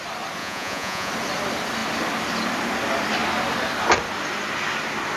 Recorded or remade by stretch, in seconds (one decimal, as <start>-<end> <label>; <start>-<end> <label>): 0.0-0.4 recorded; 0.4-1.1 remade; 1.1-5.2 recorded